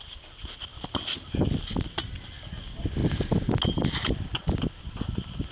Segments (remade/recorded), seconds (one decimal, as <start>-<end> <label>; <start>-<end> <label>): 0.0-5.5 recorded